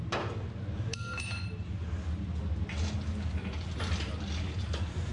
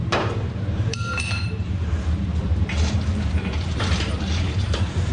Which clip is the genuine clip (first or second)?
first